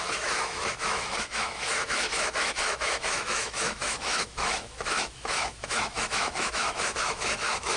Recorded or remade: remade